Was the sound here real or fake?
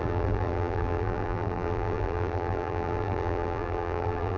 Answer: fake